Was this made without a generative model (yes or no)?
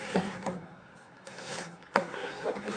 no